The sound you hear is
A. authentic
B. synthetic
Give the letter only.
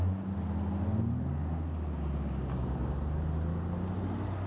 A